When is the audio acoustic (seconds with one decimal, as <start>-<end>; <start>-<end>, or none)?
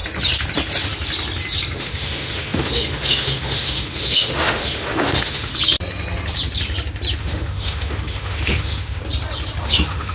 0.0-1.8; 5.5-7.2; 9.0-9.6